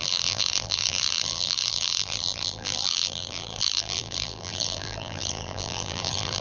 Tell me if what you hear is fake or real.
fake